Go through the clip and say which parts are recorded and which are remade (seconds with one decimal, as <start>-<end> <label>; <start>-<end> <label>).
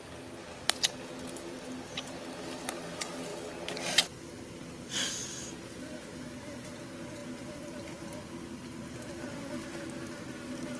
0.0-10.8 recorded